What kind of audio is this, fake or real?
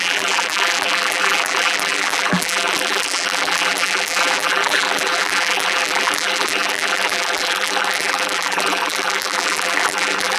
fake